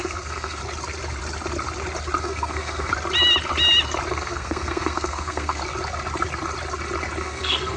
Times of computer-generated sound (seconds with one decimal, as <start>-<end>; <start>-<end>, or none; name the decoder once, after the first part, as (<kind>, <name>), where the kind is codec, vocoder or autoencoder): 0.0-0.6 (codec, SNAC); 2.2-2.9; 4.1-5.6; 7.2-7.8